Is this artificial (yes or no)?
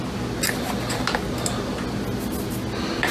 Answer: no